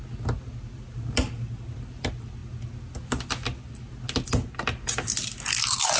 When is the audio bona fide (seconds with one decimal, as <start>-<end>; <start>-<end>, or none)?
0.0-6.0